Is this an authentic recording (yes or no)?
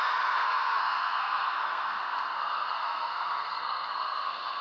no